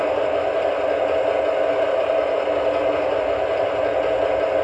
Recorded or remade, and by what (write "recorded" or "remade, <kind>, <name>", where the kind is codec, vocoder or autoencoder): recorded